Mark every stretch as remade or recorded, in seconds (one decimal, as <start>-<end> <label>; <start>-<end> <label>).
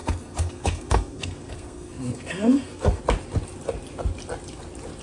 0.0-3.0 remade; 3.0-5.0 recorded